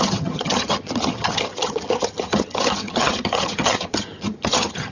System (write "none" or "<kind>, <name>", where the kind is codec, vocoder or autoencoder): vocoder, HiFi-GAN